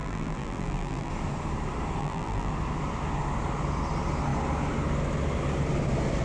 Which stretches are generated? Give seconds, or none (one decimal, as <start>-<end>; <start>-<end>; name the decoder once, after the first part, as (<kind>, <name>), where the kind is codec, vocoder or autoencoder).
0.0-1.1 (vocoder, BigVGAN v2); 2.0-2.5